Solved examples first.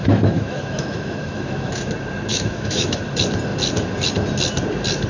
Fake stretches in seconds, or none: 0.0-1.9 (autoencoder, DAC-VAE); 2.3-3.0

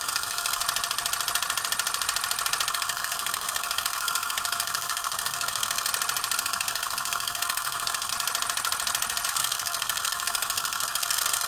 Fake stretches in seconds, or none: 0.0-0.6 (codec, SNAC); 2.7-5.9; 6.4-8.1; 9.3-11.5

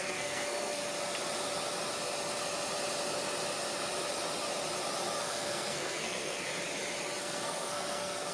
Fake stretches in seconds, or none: 0.0-0.8 (codec, SNAC); 5.2-6.5; 7.2-8.3